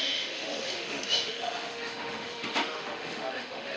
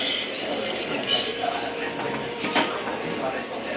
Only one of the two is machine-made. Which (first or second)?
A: first